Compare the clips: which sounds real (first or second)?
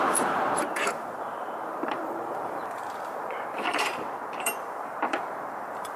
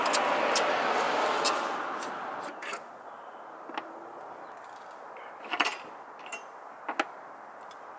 second